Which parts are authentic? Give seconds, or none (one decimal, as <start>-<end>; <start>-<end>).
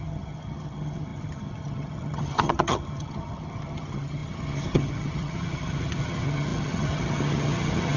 none